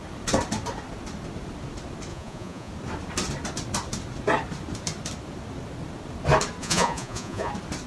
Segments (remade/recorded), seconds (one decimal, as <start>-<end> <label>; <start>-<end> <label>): 0.0-2.1 recorded; 2.1-2.7 remade; 2.7-6.6 recorded; 6.6-7.5 remade; 7.5-7.9 recorded

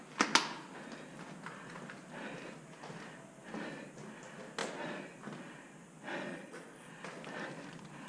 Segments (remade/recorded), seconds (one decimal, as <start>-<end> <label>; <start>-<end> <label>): 0.0-6.3 recorded; 6.3-6.9 remade; 6.9-8.1 recorded

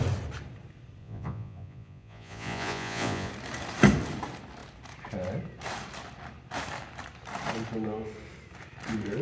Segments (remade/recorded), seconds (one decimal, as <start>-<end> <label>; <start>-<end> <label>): 0.0-1.0 recorded; 1.0-3.3 remade; 3.3-9.2 recorded